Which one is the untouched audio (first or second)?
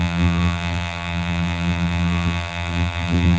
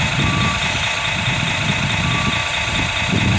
second